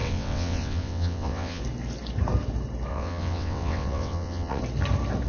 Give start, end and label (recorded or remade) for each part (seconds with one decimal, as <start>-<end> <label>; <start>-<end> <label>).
0.0-1.6 remade; 1.6-2.9 recorded; 2.9-4.6 remade; 4.6-5.3 recorded